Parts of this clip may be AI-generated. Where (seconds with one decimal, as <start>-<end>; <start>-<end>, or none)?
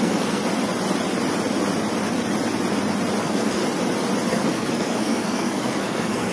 0.0-0.4; 3.2-3.6; 4.3-6.3